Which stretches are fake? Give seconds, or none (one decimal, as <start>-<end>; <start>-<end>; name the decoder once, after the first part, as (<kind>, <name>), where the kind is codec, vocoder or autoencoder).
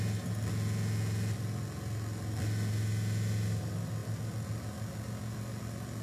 none